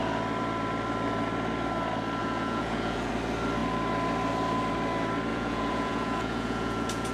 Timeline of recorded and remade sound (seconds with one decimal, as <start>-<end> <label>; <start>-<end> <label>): 0.0-2.2 recorded; 2.2-3.1 remade; 3.1-5.3 recorded; 5.3-7.1 remade